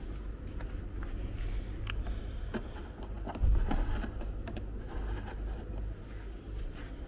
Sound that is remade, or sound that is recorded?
recorded